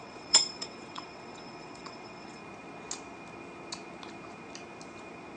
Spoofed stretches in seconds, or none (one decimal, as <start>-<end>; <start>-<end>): 0.0-2.4